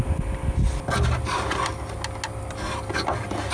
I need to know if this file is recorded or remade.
recorded